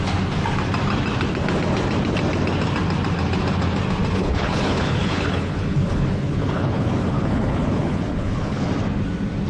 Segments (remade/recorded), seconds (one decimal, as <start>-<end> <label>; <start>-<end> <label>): 0.0-4.2 recorded; 4.2-8.7 remade; 8.7-9.5 recorded